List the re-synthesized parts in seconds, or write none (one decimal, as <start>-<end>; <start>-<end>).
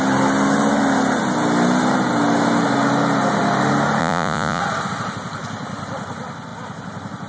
4.0-4.6